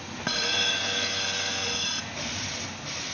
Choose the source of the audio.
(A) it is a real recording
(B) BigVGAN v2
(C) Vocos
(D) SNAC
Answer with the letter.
A